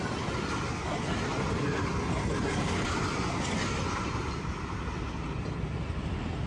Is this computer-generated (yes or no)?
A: no